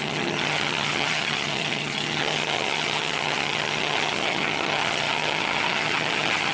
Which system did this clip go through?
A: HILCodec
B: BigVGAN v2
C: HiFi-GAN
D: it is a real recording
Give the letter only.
C